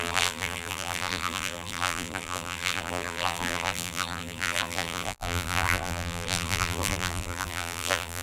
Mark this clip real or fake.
fake